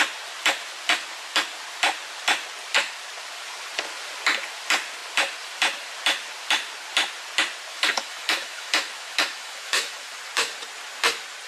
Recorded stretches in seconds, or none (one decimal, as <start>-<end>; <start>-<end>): 0.0-7.7; 10.2-11.5